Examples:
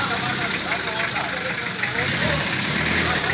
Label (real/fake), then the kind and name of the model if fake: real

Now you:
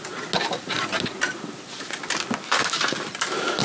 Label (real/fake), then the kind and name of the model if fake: real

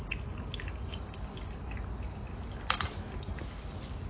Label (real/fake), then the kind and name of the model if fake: real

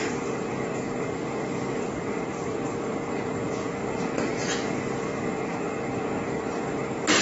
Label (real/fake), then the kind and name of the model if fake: real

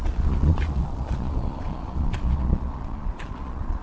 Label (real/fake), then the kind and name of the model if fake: fake, vocoder, Vocos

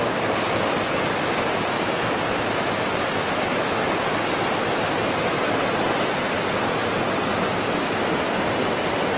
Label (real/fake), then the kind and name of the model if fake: real